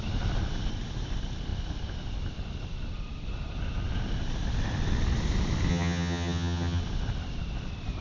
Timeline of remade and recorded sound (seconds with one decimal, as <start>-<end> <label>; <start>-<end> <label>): 0.0-5.7 recorded; 5.7-6.8 remade; 6.8-8.0 recorded